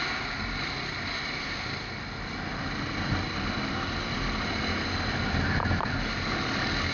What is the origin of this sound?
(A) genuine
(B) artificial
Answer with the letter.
A